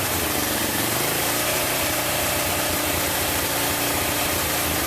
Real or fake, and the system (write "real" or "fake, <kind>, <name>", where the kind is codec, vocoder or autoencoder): fake, vocoder, BigVGAN v2